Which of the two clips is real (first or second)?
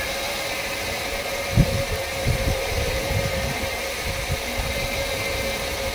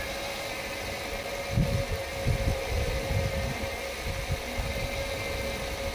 second